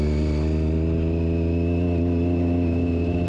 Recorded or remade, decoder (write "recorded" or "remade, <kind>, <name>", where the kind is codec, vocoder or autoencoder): recorded